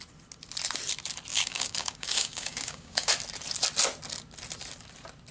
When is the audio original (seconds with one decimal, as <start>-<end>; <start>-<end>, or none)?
0.0-1.3; 3.1-5.3